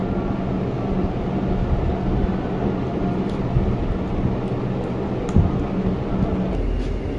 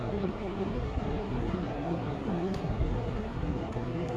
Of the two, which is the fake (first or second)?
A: second